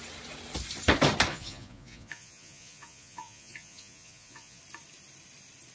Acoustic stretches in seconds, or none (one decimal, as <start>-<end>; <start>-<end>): 0.0-1.3; 4.6-5.7

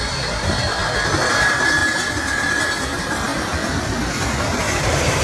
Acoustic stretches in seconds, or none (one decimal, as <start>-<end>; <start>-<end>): 0.8-1.3; 1.8-2.8

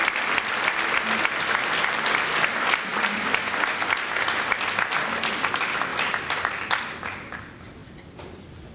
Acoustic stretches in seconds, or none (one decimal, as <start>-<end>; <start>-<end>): 0.0-5.9; 7.0-8.7

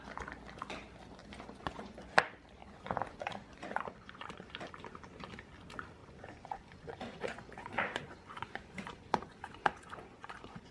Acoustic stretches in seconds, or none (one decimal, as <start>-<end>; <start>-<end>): 0.0-1.2; 2.1-2.6; 4.5-6.0

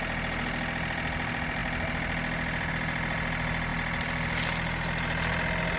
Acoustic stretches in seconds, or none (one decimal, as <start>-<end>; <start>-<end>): 0.0-5.8

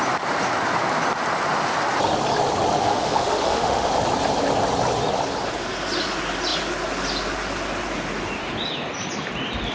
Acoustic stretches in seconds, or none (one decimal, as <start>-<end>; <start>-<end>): 0.0-2.8; 3.9-9.7

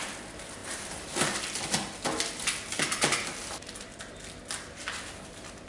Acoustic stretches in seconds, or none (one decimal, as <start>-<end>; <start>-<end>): 0.0-5.7

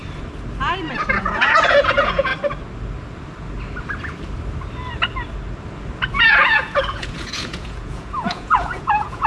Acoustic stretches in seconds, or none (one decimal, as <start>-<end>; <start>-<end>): 0.0-1.2; 2.3-6.2